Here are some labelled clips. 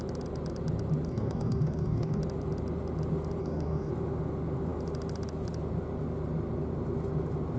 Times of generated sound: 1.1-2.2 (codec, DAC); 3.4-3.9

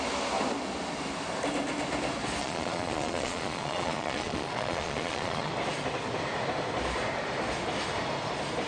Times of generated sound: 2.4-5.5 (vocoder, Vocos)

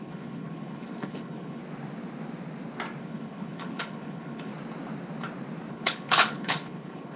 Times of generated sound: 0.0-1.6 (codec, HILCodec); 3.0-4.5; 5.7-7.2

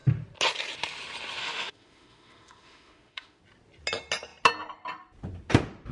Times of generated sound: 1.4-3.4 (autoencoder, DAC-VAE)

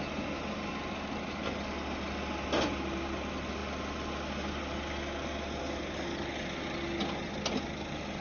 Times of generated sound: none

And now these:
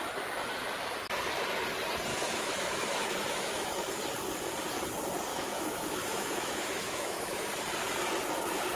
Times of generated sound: 2.1-3.8 (autoencoder, DAC-VAE); 5.3-7.6

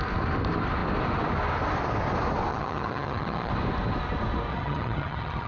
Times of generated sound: 2.5-3.5 (vocoder, HiFi-GAN); 4.5-5.5

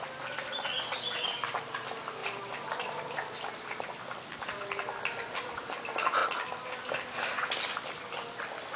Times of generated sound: none